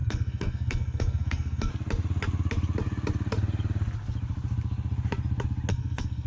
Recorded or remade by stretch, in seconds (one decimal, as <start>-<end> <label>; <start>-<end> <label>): 0.0-1.7 remade; 1.7-5.7 recorded; 5.7-6.3 remade